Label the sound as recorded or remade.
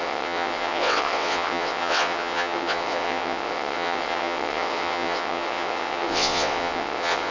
remade